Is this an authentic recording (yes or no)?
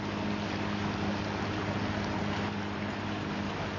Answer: yes